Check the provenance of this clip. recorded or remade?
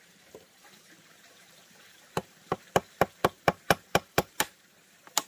remade